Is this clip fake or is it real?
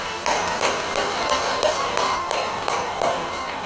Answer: fake